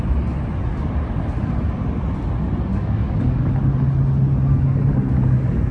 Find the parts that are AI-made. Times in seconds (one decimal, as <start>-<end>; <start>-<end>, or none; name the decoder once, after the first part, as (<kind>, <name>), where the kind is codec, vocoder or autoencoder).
2.7-3.7 (codec, DAC); 4.7-5.7